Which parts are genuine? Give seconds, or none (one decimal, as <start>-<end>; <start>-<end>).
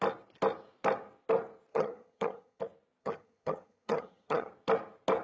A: 0.0-1.7; 2.6-3.0; 4.5-5.2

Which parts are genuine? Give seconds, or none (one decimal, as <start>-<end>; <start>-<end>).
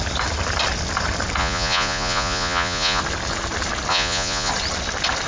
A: 0.0-1.4; 3.0-3.9; 4.5-5.3